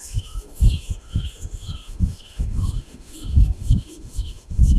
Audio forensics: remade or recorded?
remade